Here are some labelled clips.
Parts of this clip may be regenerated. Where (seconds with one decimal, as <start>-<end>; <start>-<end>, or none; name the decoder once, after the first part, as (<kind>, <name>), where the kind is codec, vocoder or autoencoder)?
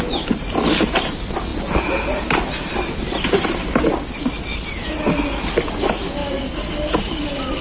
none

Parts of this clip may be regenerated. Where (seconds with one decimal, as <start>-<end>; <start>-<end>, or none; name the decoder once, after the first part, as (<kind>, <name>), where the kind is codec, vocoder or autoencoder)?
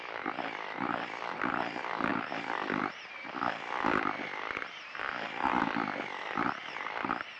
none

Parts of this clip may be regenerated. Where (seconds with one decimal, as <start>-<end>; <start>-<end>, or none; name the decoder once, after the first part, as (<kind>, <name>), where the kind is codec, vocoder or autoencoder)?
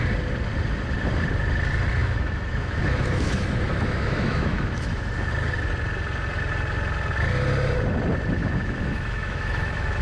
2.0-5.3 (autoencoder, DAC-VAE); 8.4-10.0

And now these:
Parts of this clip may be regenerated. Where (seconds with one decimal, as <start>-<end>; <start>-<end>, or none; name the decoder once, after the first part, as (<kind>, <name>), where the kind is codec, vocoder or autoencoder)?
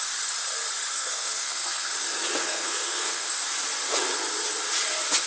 0.9-1.9 (codec, SNAC); 2.4-3.3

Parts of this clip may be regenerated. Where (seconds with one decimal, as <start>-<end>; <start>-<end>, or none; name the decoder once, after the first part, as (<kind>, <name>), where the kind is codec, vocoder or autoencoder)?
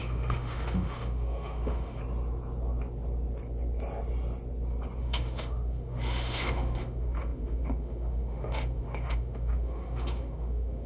0.0-2.0 (autoencoder, DAC-VAE); 5.0-10.9